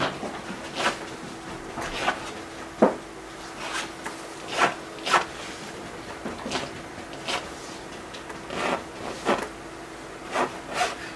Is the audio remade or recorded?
recorded